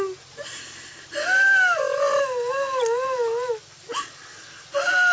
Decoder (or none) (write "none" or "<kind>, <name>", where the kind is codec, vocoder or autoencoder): none